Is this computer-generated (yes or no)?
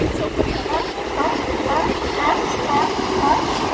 no